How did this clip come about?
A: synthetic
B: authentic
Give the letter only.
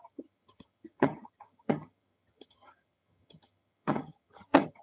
A